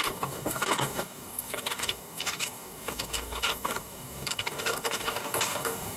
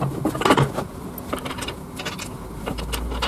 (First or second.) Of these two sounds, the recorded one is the second